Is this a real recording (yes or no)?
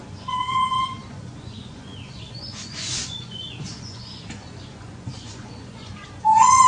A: no